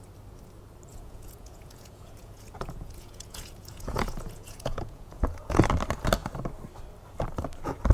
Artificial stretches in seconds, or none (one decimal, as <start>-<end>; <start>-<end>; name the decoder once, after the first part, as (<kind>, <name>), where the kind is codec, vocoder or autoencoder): 0.9-5.6 (vocoder, Vocos)